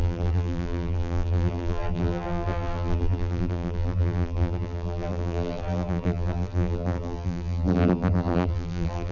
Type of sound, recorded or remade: remade